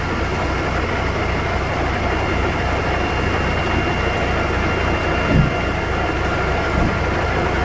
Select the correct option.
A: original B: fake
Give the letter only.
A